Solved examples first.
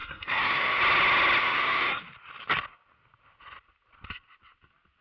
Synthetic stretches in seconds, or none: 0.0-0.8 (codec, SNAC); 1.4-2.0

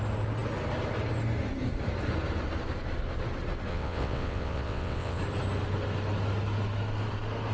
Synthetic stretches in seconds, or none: 3.7-5.2 (vocoder, WaveNeXt)

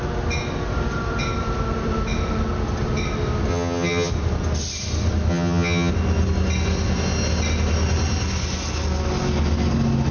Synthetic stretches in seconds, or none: 3.5-4.1 (vocoder, HiFi-GAN); 5.3-5.9

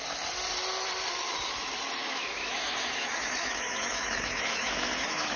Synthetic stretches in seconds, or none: 2.0-5.4 (autoencoder, DAC-VAE)